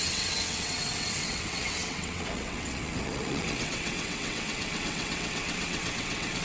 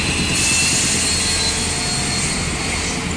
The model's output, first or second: first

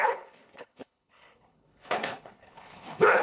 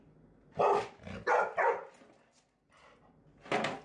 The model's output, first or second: first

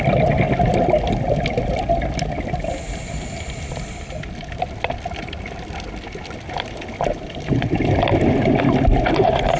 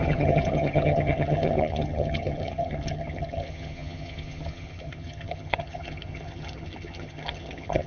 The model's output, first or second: second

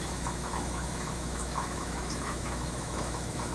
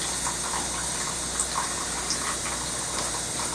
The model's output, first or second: first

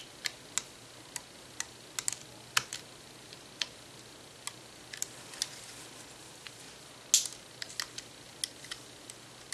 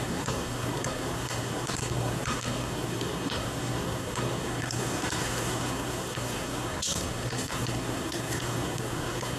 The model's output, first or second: second